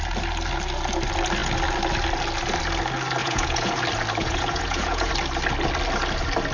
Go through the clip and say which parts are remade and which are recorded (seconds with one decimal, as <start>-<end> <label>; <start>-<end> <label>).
0.0-3.2 recorded; 3.2-3.8 remade; 3.8-4.2 recorded; 4.2-5.1 remade; 5.1-6.5 recorded